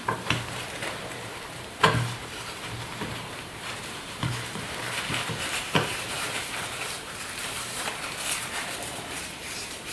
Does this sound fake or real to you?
fake